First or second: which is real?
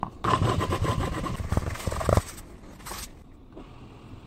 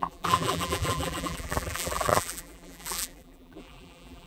first